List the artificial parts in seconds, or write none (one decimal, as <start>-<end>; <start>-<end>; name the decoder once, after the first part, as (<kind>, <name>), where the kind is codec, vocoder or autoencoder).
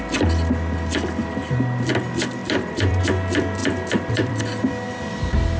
2.4-3.0 (vocoder, BigVGAN v2); 3.6-4.4